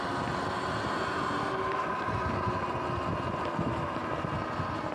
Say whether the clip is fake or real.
real